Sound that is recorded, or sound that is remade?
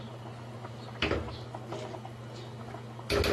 recorded